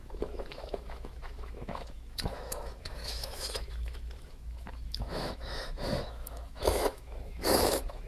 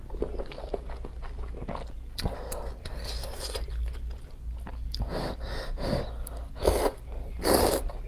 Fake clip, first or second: first